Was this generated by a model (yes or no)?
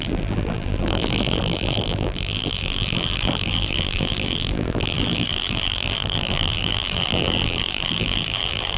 yes